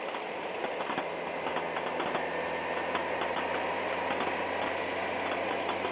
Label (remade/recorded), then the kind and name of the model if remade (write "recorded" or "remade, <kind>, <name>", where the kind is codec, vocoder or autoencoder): recorded